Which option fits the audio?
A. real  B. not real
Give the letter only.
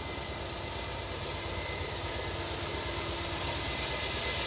A